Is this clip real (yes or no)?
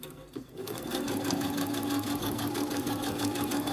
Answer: no